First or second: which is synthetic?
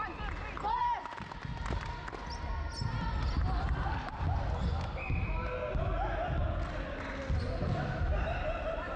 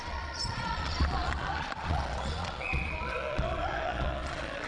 second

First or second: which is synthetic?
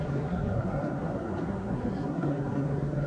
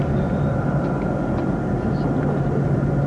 first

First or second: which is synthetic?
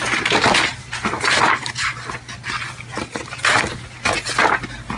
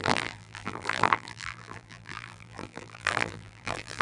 second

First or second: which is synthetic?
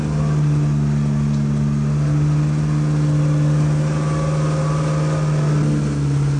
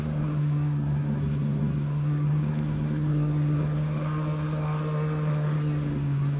second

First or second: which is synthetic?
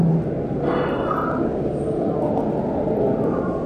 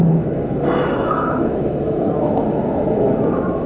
second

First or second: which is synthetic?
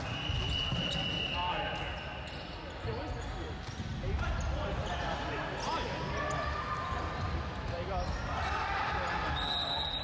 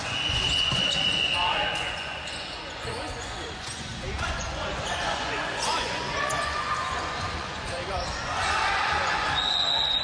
second